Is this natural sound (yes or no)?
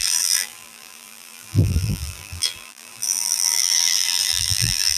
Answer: no